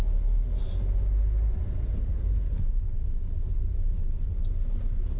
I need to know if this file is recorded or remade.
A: recorded